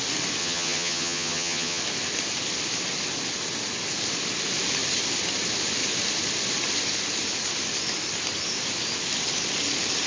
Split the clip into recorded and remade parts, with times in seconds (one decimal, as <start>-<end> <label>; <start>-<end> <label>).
0.0-0.4 recorded; 0.4-1.8 remade; 1.8-10.1 recorded